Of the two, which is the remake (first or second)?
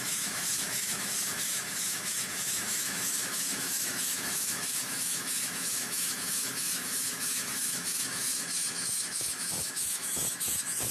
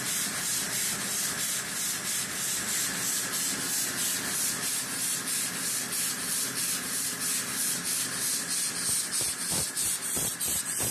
first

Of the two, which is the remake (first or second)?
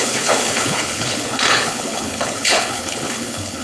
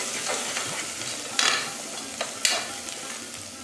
first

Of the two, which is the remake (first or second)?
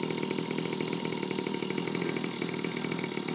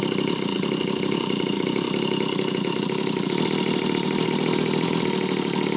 first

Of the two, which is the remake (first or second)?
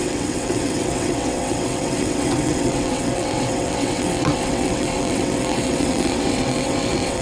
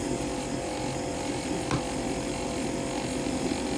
first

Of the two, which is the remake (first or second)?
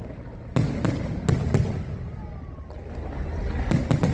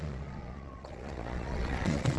second